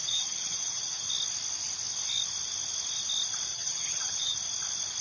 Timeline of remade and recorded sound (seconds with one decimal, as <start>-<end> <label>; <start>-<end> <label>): 0.0-1.0 remade; 1.0-3.5 recorded; 3.5-4.4 remade; 4.4-5.0 recorded